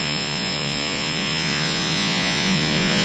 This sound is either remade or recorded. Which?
remade